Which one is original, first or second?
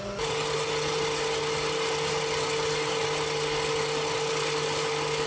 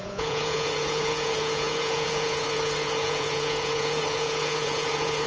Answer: first